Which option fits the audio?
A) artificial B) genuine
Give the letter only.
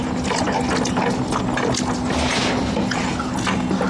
B